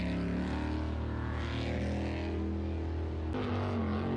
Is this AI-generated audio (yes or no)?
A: no